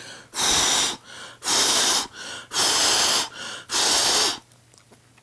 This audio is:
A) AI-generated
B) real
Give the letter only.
B